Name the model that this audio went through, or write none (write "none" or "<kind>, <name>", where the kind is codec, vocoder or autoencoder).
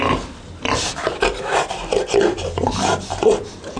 none